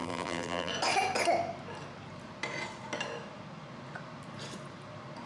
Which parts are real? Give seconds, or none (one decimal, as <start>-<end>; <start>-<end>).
0.7-5.3